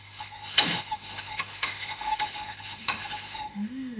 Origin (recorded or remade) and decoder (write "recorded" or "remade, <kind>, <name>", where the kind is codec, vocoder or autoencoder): remade, autoencoder, DAC-VAE